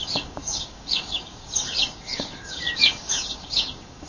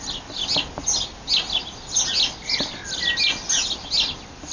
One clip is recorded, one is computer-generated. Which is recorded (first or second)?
second